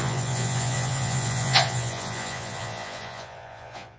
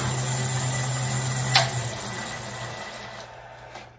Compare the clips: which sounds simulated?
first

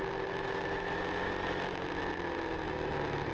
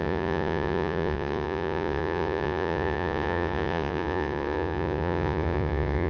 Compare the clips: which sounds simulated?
second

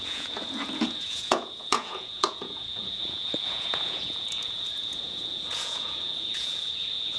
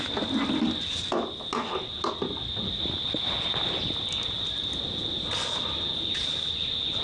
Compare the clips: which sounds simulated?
first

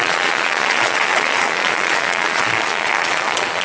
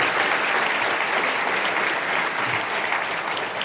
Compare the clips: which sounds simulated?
first